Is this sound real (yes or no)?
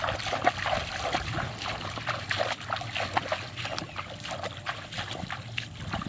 yes